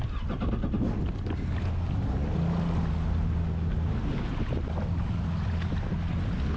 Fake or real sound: real